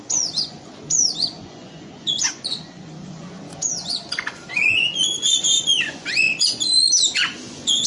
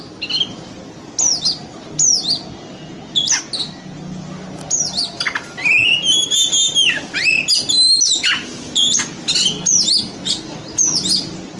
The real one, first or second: second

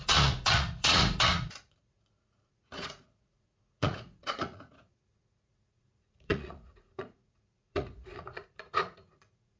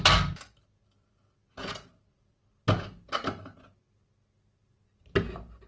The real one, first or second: second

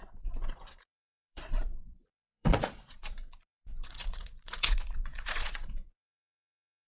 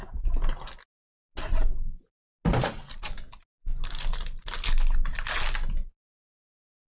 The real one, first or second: second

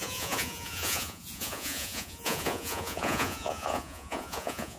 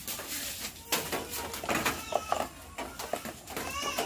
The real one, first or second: second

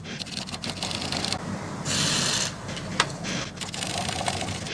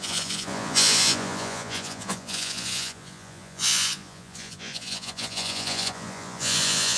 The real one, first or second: first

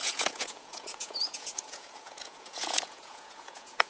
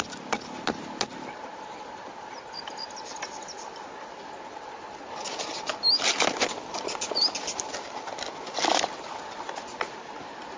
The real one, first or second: second